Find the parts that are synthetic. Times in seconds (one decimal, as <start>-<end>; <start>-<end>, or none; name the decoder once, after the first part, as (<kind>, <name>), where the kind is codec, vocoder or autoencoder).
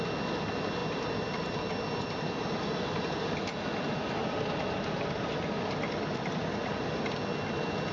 none